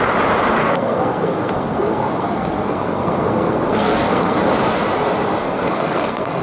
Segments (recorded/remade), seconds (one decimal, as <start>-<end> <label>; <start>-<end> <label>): 0.0-0.6 recorded; 0.6-4.4 remade; 4.4-5.4 recorded; 5.4-6.4 remade